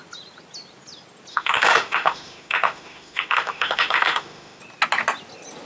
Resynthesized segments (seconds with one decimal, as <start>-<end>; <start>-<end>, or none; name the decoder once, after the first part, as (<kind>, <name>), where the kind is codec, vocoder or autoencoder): 1.3-4.6 (autoencoder, DAC-VAE)